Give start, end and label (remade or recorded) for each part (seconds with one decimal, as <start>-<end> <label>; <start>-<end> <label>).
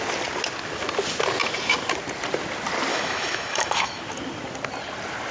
0.0-2.9 recorded; 2.9-4.0 remade; 4.0-5.3 recorded